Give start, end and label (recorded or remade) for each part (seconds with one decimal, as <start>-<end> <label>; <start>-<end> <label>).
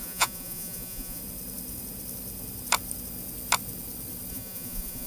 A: 0.0-1.2 remade; 1.2-4.3 recorded; 4.3-5.1 remade